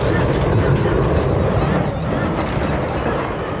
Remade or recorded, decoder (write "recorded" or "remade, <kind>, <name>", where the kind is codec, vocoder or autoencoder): recorded